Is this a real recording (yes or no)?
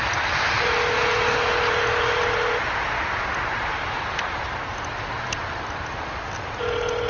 yes